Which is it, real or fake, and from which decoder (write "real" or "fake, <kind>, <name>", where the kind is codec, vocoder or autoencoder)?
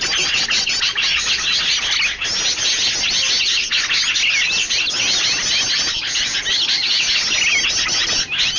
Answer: real